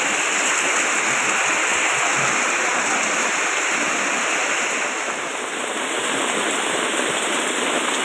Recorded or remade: recorded